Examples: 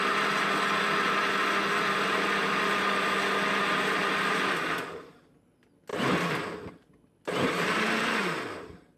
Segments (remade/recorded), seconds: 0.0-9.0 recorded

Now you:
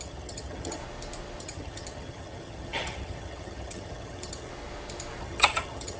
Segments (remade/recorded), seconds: 0.0-0.8 remade; 0.8-1.4 recorded; 1.4-4.5 remade; 4.5-5.2 recorded; 5.2-6.0 remade

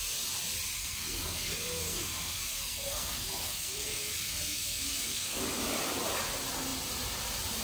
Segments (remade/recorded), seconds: 0.0-0.8 recorded; 0.8-5.4 remade; 5.4-7.6 recorded